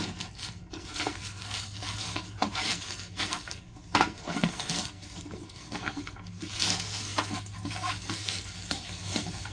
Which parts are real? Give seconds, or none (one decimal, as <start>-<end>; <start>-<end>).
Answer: none